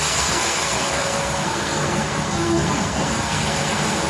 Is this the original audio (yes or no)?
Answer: no